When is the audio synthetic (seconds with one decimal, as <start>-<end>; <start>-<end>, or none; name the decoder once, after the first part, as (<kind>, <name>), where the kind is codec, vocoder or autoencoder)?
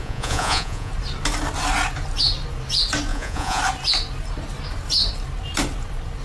0.0-0.9 (vocoder, Vocos); 3.1-3.6